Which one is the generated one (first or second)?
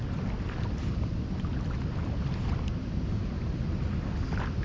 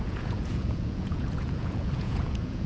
second